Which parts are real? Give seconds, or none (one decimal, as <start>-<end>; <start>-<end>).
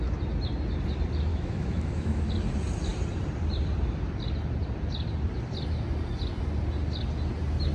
0.0-1.3; 2.3-7.7